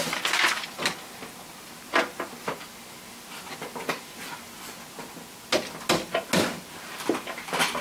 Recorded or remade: recorded